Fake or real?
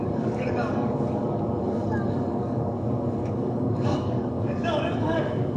fake